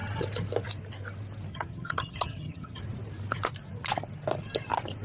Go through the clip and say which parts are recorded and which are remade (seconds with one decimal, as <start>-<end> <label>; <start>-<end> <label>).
0.0-1.5 recorded; 1.5-2.8 remade; 2.8-5.0 recorded